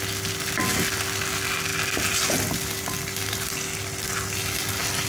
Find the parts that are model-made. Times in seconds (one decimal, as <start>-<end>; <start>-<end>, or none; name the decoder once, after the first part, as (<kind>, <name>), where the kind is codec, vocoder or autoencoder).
none